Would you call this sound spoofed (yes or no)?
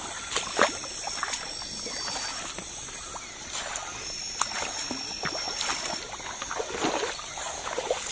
no